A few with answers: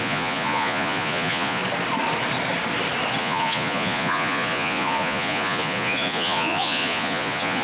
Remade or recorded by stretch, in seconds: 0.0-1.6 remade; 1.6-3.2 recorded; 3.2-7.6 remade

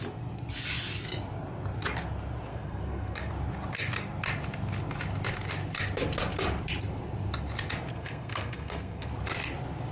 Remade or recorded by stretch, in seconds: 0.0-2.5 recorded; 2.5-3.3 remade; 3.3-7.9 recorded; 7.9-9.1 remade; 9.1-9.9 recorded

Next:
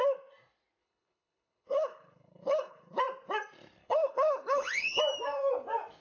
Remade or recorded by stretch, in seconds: 0.0-0.8 recorded; 0.8-3.0 remade; 3.0-3.8 recorded; 3.8-5.0 remade; 5.0-6.0 recorded

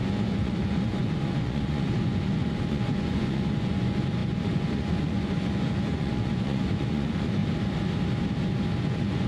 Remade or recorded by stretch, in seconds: 0.0-7.4 remade; 7.4-8.8 recorded; 8.8-9.3 remade

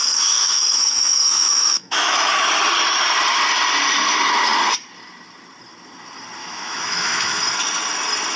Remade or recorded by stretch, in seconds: 0.0-2.3 remade; 2.3-6.4 recorded; 6.4-7.4 remade; 7.4-8.4 recorded

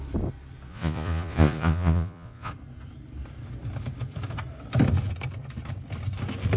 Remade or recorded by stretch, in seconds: 0.0-0.7 recorded; 0.7-2.5 remade; 2.5-6.6 recorded

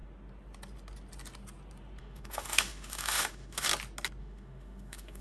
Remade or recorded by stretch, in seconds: 0.0-2.0 recorded; 2.0-3.7 remade; 3.7-4.2 recorded; 4.2-5.2 remade

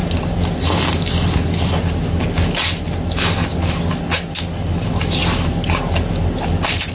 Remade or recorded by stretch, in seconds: 0.0-6.9 recorded